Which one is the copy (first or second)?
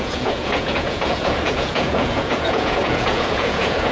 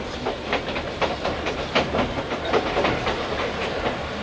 first